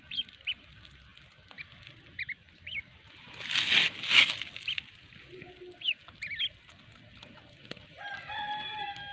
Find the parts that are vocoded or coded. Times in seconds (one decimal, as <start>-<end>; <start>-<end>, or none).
none